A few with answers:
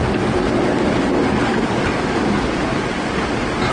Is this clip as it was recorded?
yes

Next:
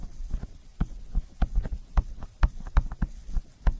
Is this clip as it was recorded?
yes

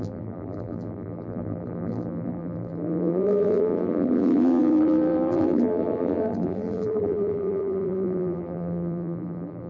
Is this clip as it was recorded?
no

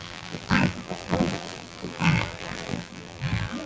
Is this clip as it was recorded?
no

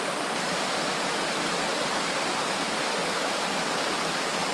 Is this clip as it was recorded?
yes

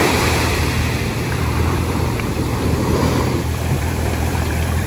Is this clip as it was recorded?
no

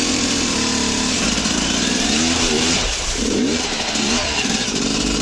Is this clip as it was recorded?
no